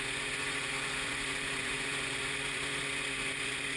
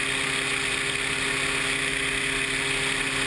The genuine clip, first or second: second